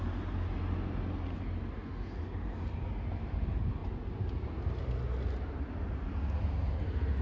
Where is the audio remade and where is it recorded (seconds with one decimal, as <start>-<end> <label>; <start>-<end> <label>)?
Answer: 0.0-7.2 recorded

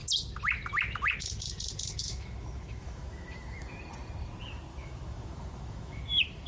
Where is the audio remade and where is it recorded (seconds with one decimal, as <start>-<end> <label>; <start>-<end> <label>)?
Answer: 0.0-2.0 recorded; 2.0-3.8 remade; 3.8-4.7 recorded; 4.7-6.0 remade; 6.0-6.5 recorded

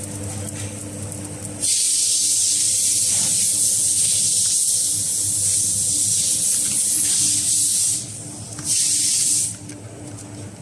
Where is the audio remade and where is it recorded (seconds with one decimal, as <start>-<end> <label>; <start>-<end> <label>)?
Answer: 0.0-10.6 recorded